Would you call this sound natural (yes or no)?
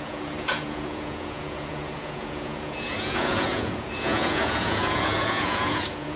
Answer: no